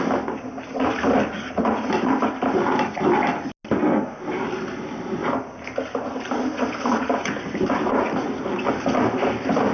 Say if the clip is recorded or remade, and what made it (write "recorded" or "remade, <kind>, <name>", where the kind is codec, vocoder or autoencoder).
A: recorded